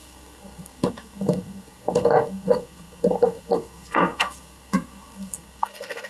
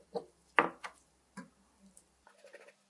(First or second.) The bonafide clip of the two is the second